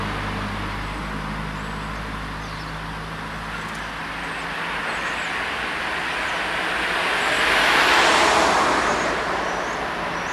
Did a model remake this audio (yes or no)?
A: no